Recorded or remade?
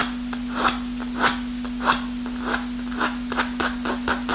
recorded